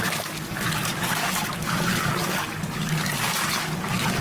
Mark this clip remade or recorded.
remade